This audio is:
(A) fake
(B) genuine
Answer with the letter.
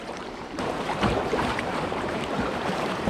A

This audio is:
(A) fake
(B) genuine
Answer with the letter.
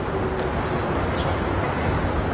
B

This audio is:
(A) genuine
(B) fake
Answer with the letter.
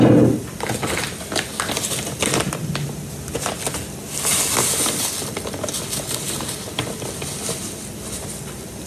A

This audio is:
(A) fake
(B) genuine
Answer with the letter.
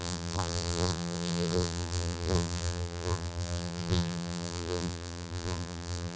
A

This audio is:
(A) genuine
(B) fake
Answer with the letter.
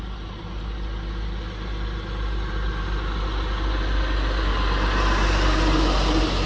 A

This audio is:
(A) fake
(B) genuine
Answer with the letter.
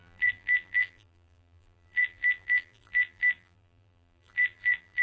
A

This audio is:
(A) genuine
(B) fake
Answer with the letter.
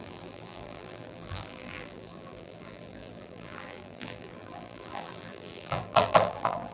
B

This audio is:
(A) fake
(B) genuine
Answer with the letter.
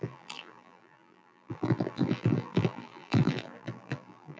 A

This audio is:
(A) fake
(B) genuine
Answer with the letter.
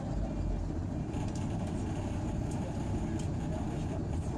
A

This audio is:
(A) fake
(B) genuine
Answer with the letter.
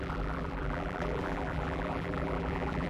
A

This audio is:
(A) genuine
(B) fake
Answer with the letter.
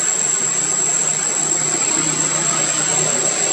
A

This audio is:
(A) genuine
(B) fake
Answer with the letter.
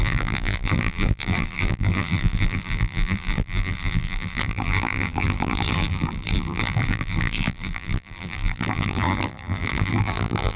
B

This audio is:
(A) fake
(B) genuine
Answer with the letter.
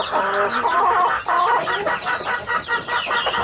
B